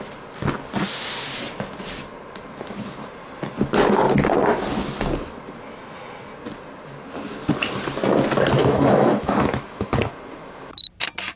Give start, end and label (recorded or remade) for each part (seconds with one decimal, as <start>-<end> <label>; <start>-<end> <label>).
0.0-8.6 recorded; 8.6-10.1 remade; 10.1-11.4 recorded